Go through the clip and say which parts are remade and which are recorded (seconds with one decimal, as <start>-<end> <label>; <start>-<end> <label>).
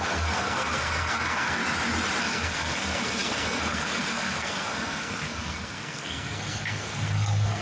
0.0-1.6 remade; 1.6-2.2 recorded; 2.2-7.6 remade